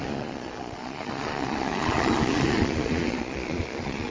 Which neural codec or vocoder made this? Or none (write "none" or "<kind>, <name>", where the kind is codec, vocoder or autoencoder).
vocoder, Vocos